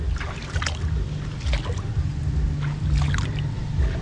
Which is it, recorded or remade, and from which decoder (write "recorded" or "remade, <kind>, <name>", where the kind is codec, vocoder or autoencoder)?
recorded